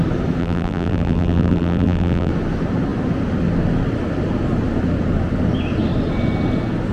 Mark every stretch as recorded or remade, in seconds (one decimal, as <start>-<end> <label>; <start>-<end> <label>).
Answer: 0.0-0.4 recorded; 0.4-2.3 remade; 2.3-6.9 recorded